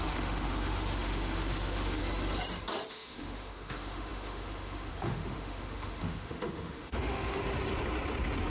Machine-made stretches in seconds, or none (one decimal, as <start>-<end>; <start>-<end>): 0.0-2.0; 2.9-7.4